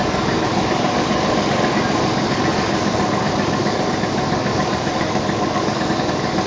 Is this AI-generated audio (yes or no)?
yes